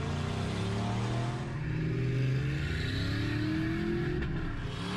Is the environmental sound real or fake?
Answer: real